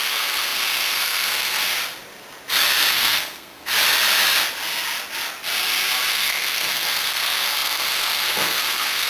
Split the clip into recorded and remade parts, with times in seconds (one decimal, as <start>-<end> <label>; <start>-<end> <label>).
0.0-1.6 remade; 1.6-2.9 recorded; 2.9-3.7 remade; 3.7-6.1 recorded; 6.1-9.1 remade